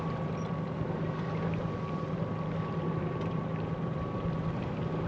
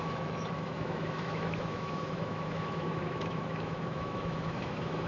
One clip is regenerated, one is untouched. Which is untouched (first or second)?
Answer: first